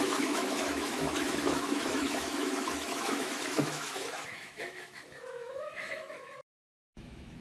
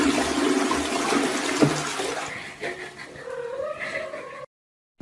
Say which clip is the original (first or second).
second